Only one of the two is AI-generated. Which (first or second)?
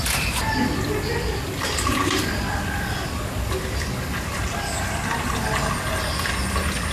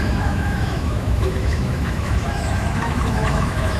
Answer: second